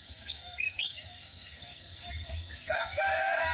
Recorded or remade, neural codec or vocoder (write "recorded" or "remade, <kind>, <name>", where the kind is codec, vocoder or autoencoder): remade, codec, SNAC